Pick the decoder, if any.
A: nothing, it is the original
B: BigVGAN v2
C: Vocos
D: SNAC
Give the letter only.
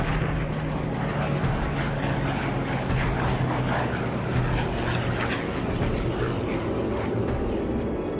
A